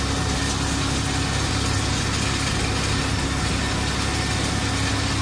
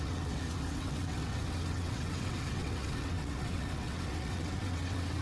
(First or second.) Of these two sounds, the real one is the first